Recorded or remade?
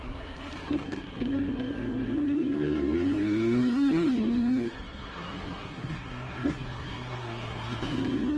remade